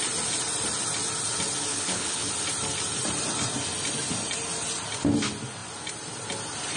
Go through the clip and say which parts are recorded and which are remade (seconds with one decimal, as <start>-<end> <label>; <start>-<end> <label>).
0.0-1.7 recorded; 1.7-2.3 remade; 2.3-6.8 recorded